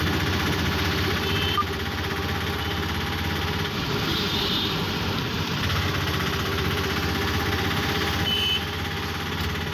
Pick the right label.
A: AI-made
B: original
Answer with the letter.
B